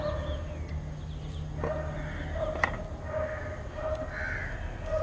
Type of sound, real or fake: real